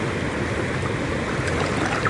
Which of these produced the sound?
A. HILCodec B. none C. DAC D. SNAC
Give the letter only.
B